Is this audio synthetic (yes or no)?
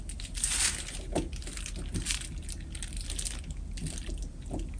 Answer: no